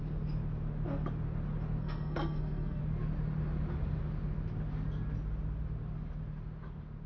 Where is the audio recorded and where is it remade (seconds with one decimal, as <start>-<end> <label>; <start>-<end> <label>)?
0.0-1.8 recorded; 1.8-2.8 remade; 2.8-7.1 recorded